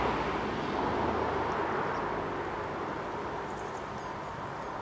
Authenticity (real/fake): real